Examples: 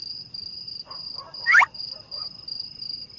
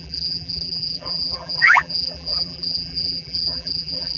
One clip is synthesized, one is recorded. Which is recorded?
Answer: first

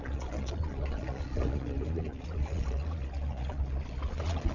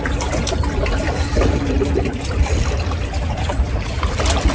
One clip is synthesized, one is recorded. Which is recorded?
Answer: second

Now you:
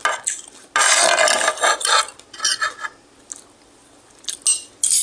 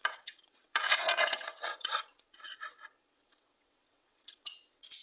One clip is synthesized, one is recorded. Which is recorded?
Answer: first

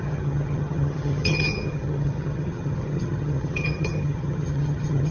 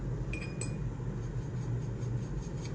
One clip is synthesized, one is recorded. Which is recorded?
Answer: second